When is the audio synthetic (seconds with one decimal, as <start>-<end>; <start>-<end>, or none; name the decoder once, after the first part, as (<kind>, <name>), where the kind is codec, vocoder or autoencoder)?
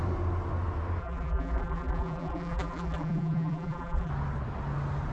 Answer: 1.0-4.1 (vocoder, BigVGAN v2)